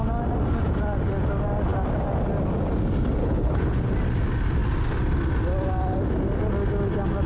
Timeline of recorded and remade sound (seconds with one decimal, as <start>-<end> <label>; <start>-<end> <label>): 0.0-3.2 recorded; 3.2-3.9 remade; 3.9-7.3 recorded